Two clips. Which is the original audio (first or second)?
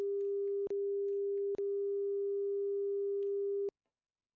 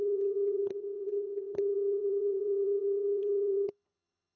first